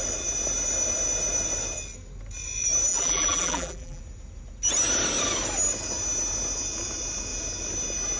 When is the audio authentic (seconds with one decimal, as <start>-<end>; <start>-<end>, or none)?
0.0-2.9; 4.0-8.2